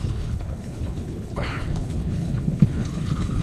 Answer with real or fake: fake